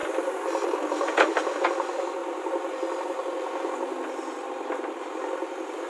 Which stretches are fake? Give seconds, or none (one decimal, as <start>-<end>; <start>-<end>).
0.0-2.2; 4.5-5.9